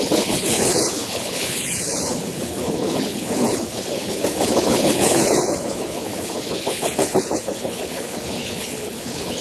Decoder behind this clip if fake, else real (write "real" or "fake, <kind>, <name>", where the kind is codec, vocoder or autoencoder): fake, codec, HILCodec